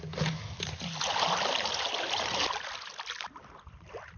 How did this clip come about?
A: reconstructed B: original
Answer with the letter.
B